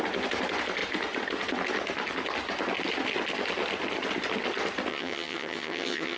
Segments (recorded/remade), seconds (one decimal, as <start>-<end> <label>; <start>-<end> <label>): 0.0-4.9 recorded; 4.9-6.2 remade